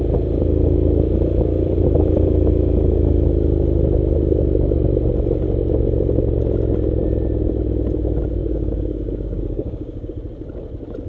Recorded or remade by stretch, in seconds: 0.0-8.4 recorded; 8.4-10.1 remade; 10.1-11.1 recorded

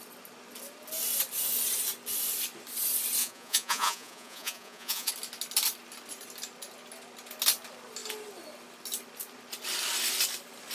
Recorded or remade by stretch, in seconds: 0.0-3.2 recorded; 3.2-5.1 remade; 5.1-10.7 recorded

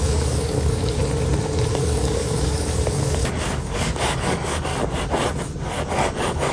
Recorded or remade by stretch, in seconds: 0.0-1.0 remade; 1.0-1.7 recorded; 1.7-4.7 remade; 4.7-5.9 recorded; 5.9-6.5 remade

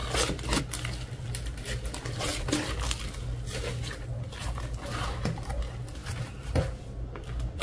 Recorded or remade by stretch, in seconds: 0.0-7.6 recorded

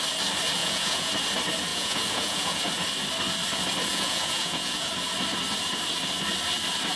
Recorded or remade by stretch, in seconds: 0.0-0.6 recorded; 0.6-1.1 remade; 1.1-1.7 recorded; 1.7-2.6 remade; 2.6-3.9 recorded; 3.9-4.9 remade; 4.9-7.0 recorded

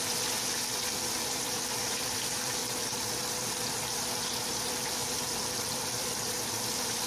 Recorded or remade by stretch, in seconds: 0.0-2.6 remade; 2.6-4.5 recorded; 4.5-5.0 remade; 5.0-5.7 recorded; 5.7-7.1 remade